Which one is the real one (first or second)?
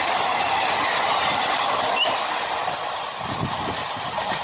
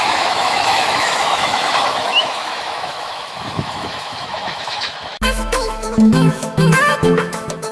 first